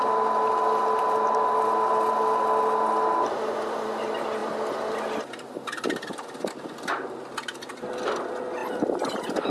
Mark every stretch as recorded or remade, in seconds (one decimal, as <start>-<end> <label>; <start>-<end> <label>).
0.0-9.5 recorded